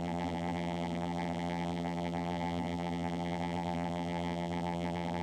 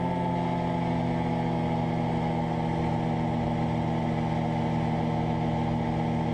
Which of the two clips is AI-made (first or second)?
first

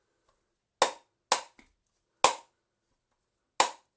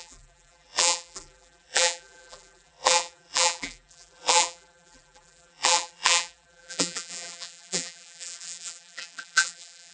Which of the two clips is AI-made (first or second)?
second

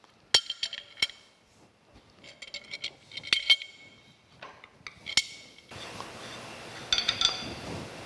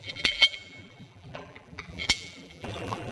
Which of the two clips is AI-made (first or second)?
second